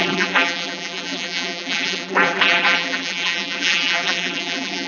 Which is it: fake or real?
fake